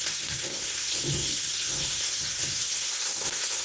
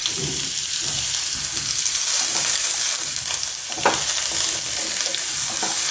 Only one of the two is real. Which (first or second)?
second